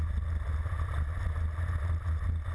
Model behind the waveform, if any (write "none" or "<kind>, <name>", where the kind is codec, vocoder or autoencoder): none